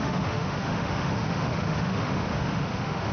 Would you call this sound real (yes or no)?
no